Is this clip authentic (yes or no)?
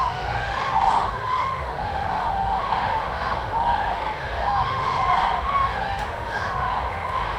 no